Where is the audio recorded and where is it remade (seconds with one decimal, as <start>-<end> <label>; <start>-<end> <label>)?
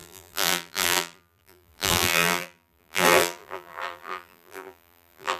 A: 0.0-5.4 remade